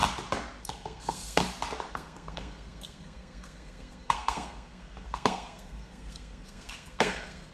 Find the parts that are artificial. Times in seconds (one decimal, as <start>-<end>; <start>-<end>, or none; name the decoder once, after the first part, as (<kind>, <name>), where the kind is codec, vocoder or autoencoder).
0.6-1.4 (codec, SNAC); 1.9-7.5